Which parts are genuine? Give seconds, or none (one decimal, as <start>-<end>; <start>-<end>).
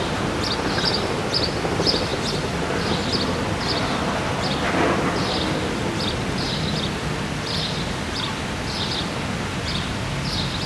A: 0.0-10.7